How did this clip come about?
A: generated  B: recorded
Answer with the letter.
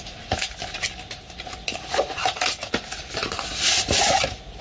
B